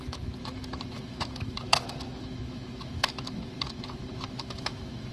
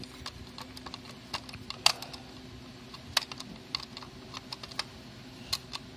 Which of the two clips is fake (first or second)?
first